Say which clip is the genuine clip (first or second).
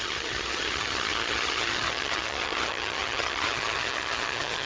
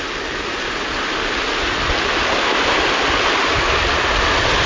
second